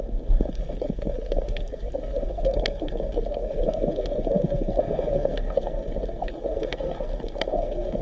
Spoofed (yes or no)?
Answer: yes